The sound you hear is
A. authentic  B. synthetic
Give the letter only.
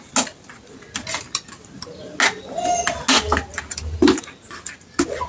A